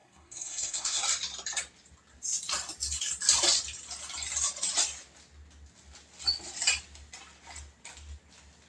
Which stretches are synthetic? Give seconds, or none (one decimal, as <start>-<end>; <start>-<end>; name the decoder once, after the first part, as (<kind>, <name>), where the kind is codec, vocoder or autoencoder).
0.0-1.0 (codec, SNAC)